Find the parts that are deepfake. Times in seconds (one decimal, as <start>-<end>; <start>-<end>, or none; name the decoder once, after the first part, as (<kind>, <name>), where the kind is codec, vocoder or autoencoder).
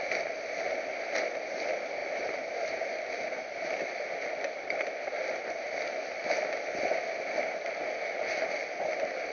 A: none